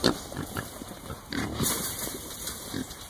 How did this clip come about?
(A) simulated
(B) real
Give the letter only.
A